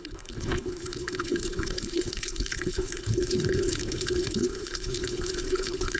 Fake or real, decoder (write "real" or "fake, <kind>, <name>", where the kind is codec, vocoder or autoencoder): fake, codec, HILCodec